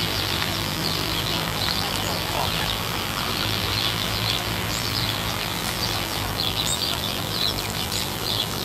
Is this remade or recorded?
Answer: remade